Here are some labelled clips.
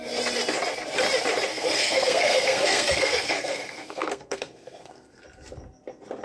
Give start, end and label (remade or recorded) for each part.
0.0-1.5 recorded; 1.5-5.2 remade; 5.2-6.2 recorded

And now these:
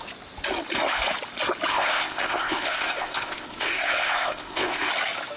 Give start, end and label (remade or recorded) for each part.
0.0-1.7 recorded; 1.7-4.9 remade; 4.9-5.4 recorded

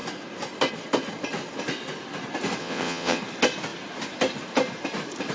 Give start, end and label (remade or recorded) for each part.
0.0-2.6 recorded; 2.6-3.2 remade; 3.2-5.3 recorded

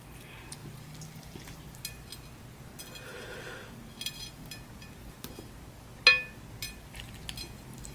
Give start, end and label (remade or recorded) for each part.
0.0-7.9 recorded

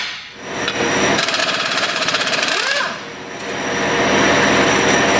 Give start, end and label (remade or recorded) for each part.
0.0-1.4 recorded; 1.4-2.4 remade; 2.4-5.2 recorded